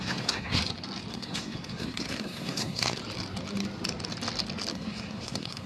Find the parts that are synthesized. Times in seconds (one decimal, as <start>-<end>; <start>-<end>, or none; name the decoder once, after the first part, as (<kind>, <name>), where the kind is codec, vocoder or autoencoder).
0.0-0.6 (codec, SNAC); 1.1-3.0; 4.7-5.7